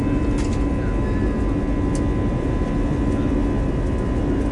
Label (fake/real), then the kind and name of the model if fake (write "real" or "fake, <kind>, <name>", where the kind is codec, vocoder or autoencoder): real